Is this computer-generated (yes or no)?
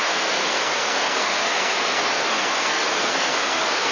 yes